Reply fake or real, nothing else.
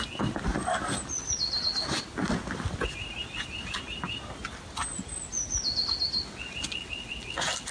real